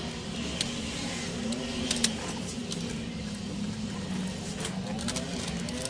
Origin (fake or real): real